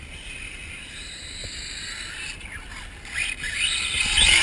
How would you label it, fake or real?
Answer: real